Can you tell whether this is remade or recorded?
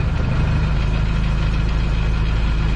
recorded